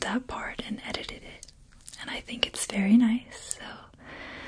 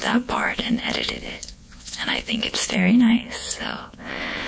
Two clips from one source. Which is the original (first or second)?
first